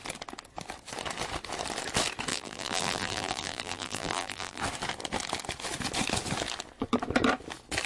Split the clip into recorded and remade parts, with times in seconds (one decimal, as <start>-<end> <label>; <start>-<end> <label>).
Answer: 0.0-2.3 recorded; 2.3-4.6 remade; 4.6-7.9 recorded